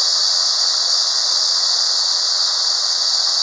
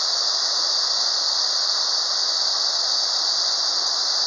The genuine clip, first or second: second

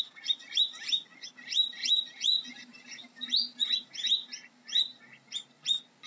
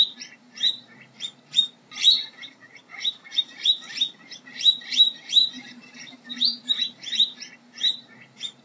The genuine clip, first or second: first